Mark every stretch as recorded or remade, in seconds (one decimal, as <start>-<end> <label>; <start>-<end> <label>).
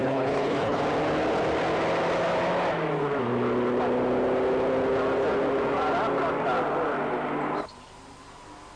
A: 0.0-0.8 remade; 0.8-8.8 recorded